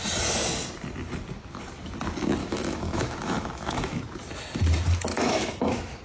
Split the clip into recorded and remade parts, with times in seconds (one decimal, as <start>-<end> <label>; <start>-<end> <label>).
0.0-2.4 recorded; 2.4-4.0 remade; 4.0-5.1 recorded; 5.1-6.0 remade